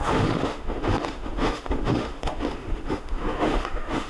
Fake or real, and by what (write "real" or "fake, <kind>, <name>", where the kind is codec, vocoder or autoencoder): fake, autoencoder, DAC-VAE